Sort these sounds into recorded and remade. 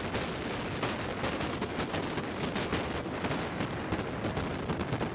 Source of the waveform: recorded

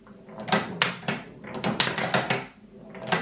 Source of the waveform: recorded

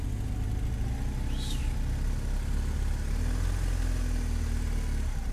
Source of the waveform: recorded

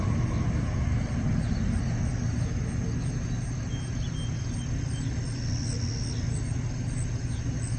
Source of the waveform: recorded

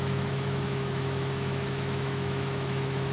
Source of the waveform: remade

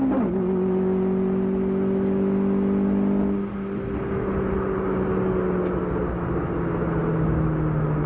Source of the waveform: recorded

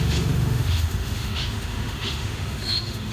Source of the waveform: remade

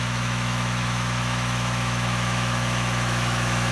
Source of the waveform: remade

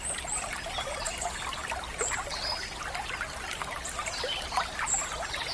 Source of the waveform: recorded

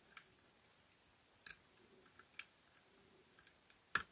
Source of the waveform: recorded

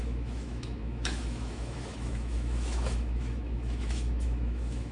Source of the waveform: remade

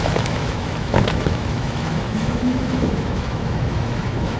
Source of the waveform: remade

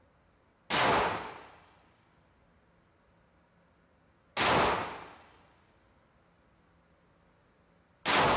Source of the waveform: recorded